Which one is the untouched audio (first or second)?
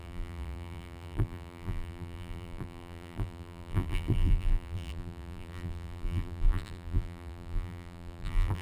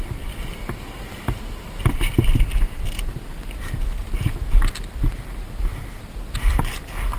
second